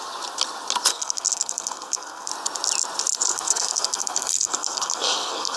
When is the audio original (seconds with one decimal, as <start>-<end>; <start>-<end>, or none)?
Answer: 0.0-0.9; 2.3-3.3